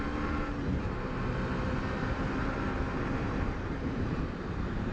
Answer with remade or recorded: remade